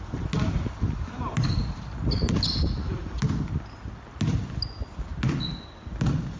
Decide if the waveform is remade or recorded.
recorded